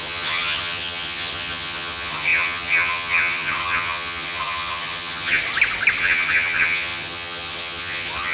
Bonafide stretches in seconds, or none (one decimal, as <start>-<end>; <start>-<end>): 5.4-6.0